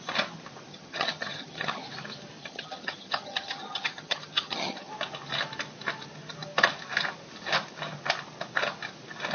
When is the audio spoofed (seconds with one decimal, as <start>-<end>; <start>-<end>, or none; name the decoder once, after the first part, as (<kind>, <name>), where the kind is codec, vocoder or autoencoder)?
0.7-1.8 (vocoder, HiFi-GAN); 2.4-4.9